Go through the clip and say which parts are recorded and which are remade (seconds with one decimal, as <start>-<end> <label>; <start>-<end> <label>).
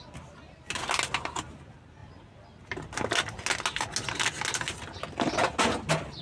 0.0-6.2 recorded